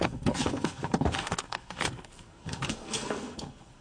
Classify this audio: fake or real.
fake